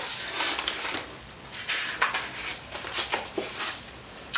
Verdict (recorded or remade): recorded